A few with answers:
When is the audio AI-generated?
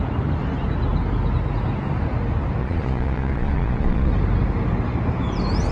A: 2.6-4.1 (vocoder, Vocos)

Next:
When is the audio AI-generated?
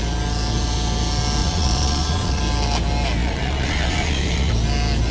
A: 1.4-2.4 (vocoder, Vocos); 3.2-4.5